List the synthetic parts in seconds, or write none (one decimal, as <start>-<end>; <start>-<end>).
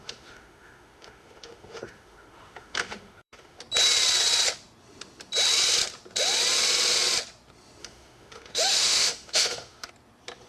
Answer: 0.0-3.6; 7.8-9.9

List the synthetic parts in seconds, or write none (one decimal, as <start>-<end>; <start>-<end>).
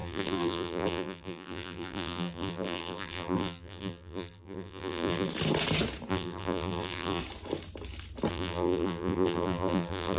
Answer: 0.0-5.3; 6.1-7.2; 8.3-10.2